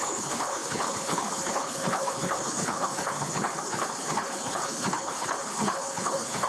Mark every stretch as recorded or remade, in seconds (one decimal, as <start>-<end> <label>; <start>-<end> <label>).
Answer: 0.0-6.5 remade

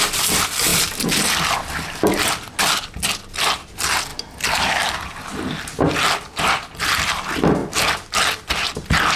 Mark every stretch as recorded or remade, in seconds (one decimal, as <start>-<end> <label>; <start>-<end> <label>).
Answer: 0.0-0.7 recorded; 0.7-1.4 remade; 1.4-9.2 recorded

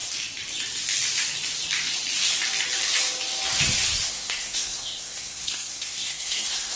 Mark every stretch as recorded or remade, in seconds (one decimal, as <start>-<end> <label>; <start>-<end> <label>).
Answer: 0.0-4.1 recorded; 4.1-6.8 remade

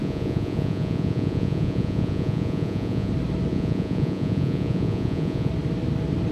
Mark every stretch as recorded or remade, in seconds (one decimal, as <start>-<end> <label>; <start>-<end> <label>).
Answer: 0.0-3.1 remade; 3.1-3.5 recorded; 3.5-5.5 remade; 5.5-6.3 recorded

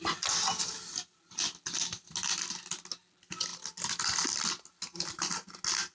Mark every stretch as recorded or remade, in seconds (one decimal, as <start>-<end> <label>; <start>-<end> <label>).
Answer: 0.0-5.9 recorded

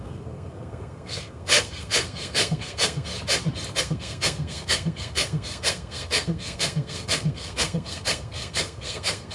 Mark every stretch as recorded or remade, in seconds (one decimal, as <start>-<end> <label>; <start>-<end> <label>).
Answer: 0.0-3.1 remade; 3.1-3.8 recorded; 3.8-9.3 remade

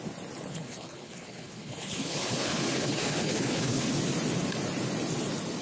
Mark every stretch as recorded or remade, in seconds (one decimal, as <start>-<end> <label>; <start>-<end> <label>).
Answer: 0.0-0.5 recorded; 0.5-3.9 remade; 3.9-5.6 recorded

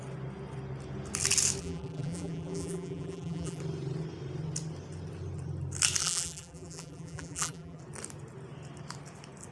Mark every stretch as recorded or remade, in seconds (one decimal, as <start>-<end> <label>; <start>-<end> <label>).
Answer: 0.0-1.6 recorded; 1.6-3.6 remade; 3.6-6.0 recorded; 6.0-7.8 remade; 7.8-9.5 recorded